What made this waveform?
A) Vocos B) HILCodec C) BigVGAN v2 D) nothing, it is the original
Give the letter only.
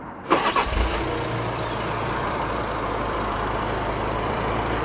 C